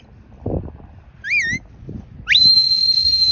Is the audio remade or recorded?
recorded